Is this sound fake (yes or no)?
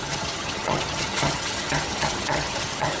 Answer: yes